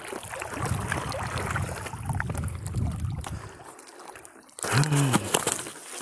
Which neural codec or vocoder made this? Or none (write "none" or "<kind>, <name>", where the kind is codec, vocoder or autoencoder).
none